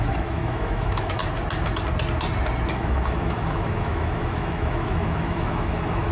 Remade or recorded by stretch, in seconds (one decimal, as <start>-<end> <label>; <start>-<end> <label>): 0.0-1.2 remade; 1.2-2.7 recorded; 2.7-6.1 remade